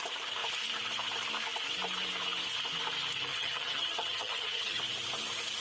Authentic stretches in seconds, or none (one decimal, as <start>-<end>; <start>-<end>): 0.0-3.3; 4.8-5.6